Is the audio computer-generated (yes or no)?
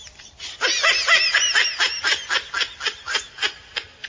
no